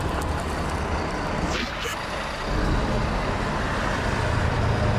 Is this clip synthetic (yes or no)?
no